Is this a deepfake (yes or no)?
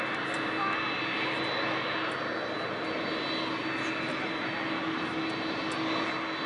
no